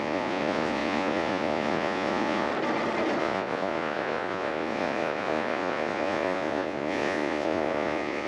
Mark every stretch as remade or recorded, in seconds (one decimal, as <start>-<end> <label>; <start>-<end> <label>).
0.0-2.5 remade; 2.5-3.2 recorded; 3.2-8.3 remade